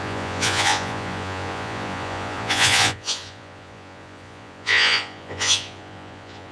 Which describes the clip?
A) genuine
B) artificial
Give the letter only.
B